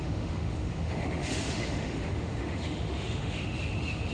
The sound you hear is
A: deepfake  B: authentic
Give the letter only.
A